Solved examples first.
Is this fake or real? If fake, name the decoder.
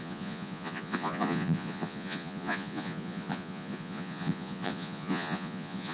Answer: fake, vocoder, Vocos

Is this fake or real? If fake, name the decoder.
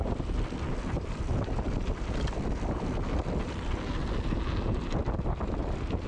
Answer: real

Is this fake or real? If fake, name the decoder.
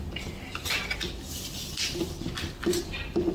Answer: real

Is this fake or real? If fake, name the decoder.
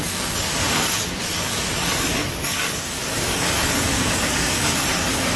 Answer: fake, codec, DAC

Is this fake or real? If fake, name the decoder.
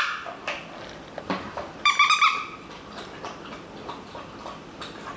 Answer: fake, vocoder, BigVGAN v2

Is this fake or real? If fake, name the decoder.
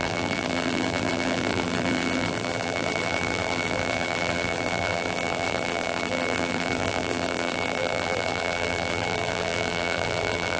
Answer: fake, vocoder, BigVGAN v2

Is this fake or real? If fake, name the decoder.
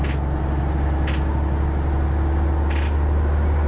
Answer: real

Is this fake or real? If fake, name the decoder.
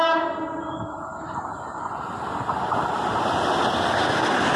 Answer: real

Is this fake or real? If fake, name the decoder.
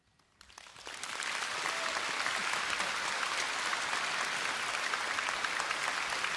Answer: real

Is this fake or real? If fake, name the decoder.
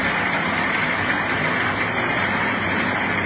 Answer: real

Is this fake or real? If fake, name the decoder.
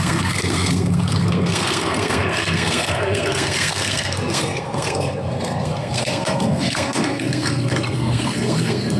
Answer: fake, codec, SNAC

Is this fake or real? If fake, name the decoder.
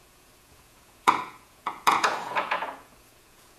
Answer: fake, vocoder, Vocos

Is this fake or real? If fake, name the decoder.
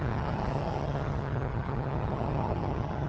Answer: fake, vocoder, HiFi-GAN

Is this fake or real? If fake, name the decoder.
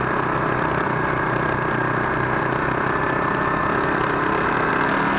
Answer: real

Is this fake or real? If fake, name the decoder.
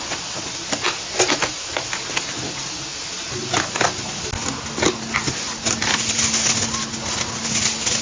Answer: real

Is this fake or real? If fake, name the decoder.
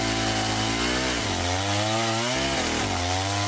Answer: real